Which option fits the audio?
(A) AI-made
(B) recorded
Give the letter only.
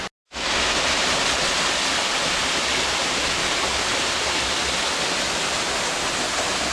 B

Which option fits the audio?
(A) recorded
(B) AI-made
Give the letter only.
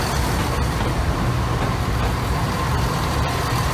A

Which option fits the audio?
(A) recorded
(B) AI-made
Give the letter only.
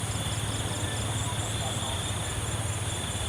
A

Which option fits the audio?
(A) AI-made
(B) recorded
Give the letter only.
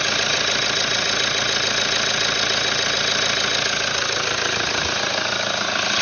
B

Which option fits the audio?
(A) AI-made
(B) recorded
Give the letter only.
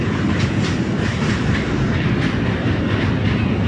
B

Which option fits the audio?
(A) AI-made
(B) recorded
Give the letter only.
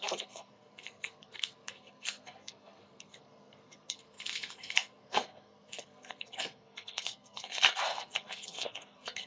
A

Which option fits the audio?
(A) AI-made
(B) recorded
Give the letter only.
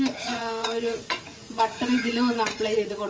A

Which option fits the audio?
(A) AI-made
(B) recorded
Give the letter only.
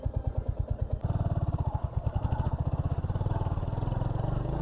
B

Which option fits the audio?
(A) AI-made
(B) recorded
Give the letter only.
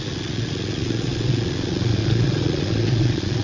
A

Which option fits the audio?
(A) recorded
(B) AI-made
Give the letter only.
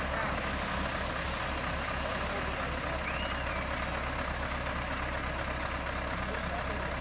A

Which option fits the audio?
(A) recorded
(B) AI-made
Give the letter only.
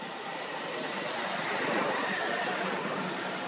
A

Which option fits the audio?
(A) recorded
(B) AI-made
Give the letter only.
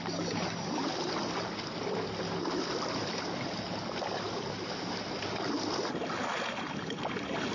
A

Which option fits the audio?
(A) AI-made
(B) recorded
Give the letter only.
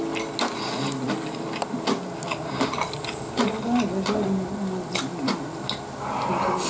B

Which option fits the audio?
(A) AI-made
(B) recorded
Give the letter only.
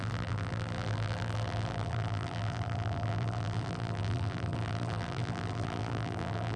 A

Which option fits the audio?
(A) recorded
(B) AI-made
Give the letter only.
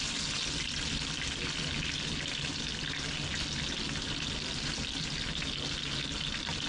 A